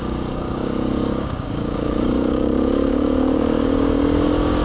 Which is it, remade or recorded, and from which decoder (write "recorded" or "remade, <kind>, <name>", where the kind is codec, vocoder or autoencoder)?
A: remade, codec, DAC